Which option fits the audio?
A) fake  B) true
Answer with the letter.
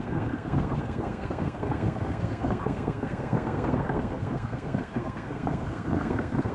A